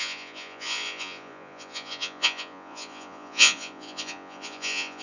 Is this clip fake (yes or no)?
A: yes